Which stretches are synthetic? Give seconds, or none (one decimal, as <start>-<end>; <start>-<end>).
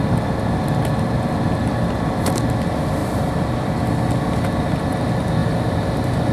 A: 3.0-3.7; 5.4-6.3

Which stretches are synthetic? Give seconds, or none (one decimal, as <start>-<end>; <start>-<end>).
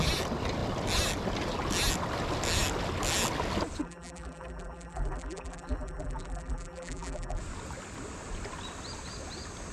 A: 3.8-7.4